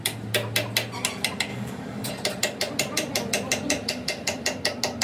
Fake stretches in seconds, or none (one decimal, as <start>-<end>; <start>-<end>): 1.5-2.1